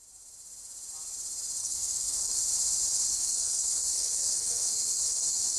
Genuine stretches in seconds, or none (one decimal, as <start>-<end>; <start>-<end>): 0.0-1.6; 2.4-3.1